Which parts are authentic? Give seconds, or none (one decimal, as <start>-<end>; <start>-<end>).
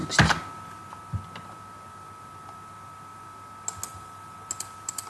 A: 0.0-5.1